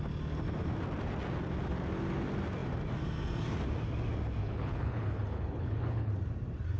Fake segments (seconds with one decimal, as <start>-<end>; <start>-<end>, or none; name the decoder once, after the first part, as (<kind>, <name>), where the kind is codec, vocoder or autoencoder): 4.4-6.1 (codec, HILCodec)